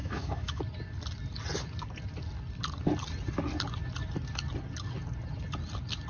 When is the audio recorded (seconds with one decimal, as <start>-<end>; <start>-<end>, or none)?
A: 0.6-6.1